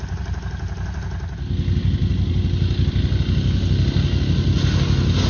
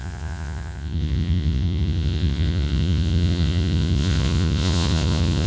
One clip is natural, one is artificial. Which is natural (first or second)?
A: first